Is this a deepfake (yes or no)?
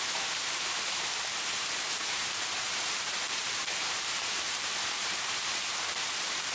yes